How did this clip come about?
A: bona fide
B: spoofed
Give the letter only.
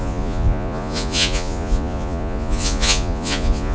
B